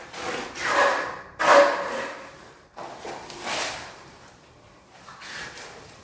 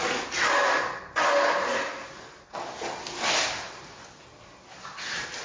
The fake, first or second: first